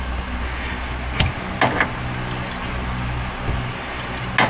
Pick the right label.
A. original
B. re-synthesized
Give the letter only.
A